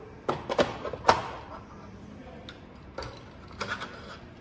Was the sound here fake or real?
real